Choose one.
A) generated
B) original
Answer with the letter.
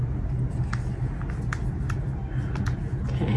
B